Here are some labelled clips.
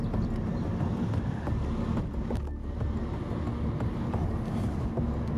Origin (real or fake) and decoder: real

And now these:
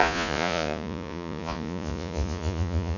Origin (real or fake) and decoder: fake, vocoder, Vocos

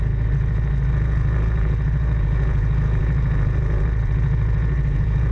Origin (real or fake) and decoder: fake, vocoder, Vocos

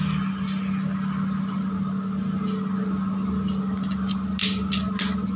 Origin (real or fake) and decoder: real